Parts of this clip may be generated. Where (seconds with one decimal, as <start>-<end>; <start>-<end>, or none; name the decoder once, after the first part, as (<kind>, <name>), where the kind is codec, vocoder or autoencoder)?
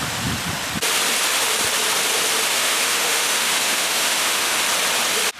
2.5-4.6 (autoencoder, DAC-VAE)